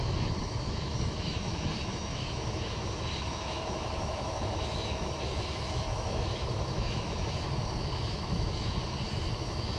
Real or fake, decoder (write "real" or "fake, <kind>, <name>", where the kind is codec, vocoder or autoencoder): fake, autoencoder, DAC-VAE